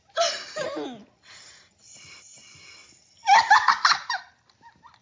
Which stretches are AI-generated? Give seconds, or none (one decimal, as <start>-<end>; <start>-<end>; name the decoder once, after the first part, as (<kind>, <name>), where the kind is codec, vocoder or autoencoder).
none